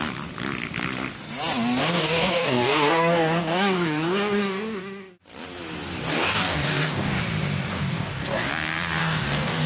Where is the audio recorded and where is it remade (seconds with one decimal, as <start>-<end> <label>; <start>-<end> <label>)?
0.0-1.8 recorded; 1.8-4.8 remade; 4.8-6.1 recorded; 6.1-7.2 remade; 7.2-7.7 recorded; 7.7-8.5 remade; 8.5-9.0 recorded; 9.0-9.7 remade